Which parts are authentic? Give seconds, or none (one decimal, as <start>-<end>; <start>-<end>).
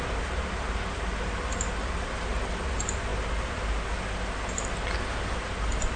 0.0-6.0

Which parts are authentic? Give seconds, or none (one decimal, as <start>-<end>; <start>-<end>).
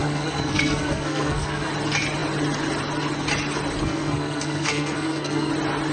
1.7-3.8; 5.5-5.9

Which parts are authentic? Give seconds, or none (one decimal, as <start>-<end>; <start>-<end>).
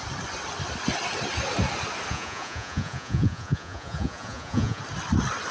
0.0-2.1; 4.8-5.5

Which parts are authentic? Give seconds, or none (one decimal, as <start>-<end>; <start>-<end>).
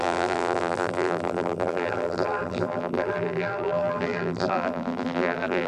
none